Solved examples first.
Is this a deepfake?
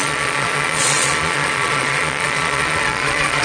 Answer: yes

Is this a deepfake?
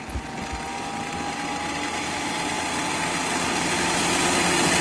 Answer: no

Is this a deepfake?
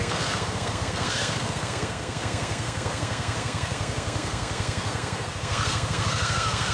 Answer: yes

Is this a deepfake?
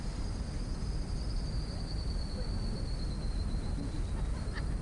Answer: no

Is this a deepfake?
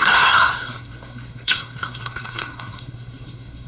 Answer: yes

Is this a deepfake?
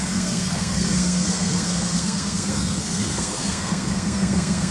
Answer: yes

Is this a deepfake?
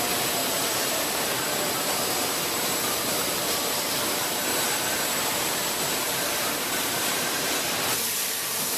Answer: yes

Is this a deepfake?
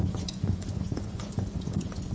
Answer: yes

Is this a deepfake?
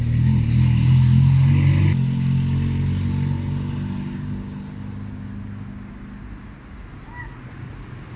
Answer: no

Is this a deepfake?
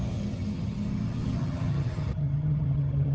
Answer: yes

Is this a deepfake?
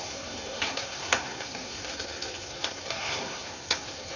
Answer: yes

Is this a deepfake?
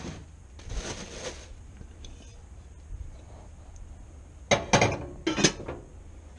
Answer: no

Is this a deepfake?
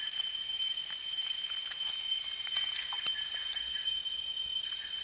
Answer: no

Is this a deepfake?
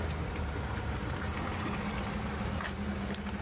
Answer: no